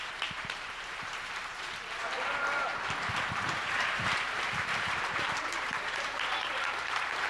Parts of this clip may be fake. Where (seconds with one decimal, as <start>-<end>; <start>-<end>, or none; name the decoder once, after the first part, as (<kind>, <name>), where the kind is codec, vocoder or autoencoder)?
0.0-2.0 (vocoder, BigVGAN v2); 3.1-7.3